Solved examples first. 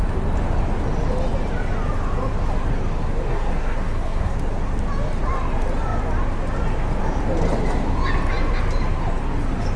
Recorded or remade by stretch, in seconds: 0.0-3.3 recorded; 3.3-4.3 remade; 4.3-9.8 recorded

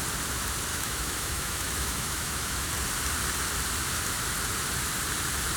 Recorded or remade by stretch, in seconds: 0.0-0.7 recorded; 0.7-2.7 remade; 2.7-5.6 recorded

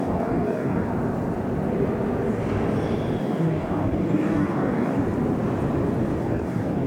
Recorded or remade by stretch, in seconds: 0.0-0.9 remade; 0.9-3.2 recorded; 3.2-5.0 remade; 5.0-6.2 recorded; 6.2-6.9 remade

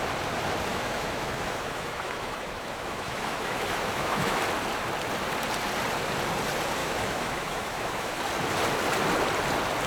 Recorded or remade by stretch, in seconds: 0.0-0.7 recorded; 0.7-4.4 remade; 4.4-6.8 recorded; 6.8-8.2 remade; 8.2-9.9 recorded

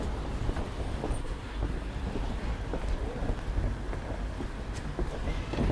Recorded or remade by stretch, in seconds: 0.0-1.2 recorded; 1.2-1.9 remade; 1.9-5.7 recorded

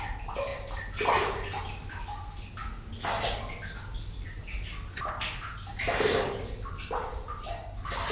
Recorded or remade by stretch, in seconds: 0.0-8.1 recorded

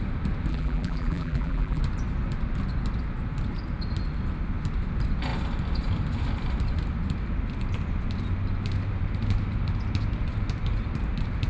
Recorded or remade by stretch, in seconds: 0.0-0.5 recorded; 0.5-1.8 remade; 1.8-11.5 recorded